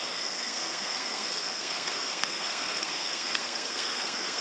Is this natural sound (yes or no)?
no